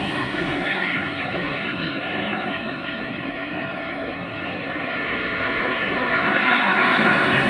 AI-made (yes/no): yes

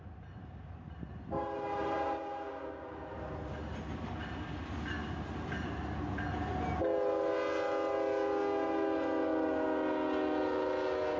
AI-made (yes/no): no